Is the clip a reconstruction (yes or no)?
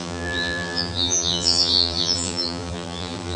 yes